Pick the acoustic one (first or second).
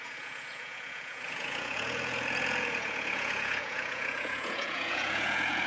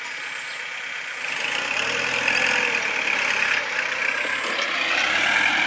second